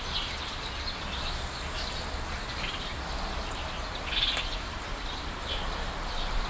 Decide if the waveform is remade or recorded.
recorded